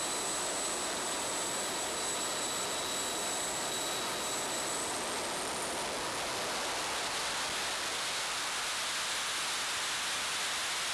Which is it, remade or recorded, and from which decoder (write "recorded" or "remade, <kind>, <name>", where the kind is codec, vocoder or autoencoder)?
recorded